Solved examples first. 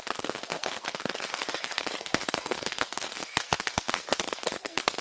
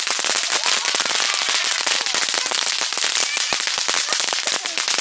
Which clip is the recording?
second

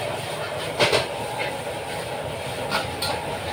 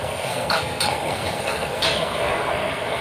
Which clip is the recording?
first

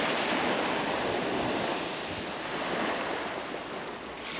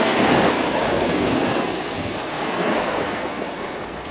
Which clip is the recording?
first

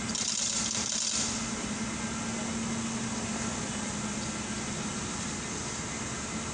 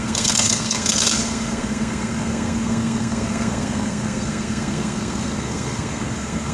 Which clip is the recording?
first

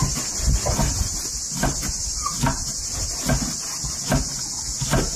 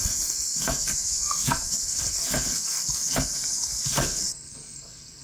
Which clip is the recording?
first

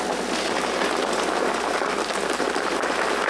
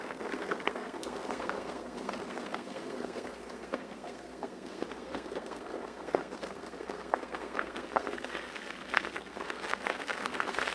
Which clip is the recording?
first